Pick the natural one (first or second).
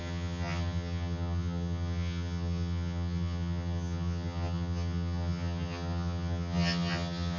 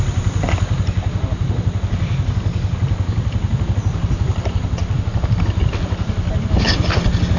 second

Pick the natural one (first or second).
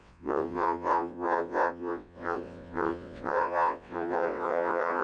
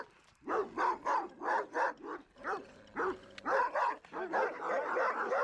second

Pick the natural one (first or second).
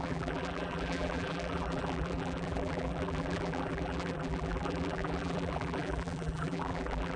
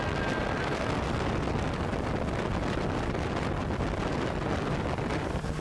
second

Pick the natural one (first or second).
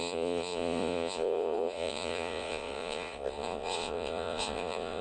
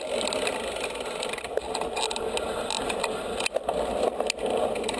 second